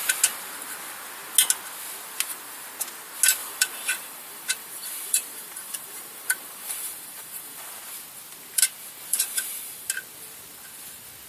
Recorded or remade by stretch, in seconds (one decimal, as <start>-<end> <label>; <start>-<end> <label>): 0.0-3.4 recorded; 3.4-7.8 remade; 7.8-9.1 recorded; 9.1-9.9 remade; 9.9-11.3 recorded